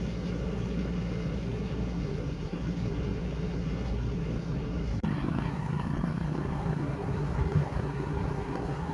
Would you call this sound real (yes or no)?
no